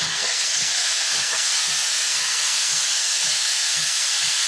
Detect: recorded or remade remade